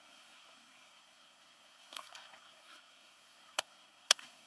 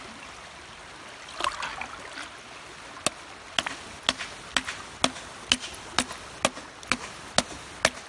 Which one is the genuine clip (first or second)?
second